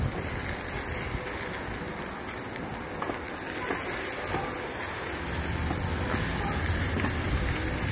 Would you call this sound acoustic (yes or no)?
yes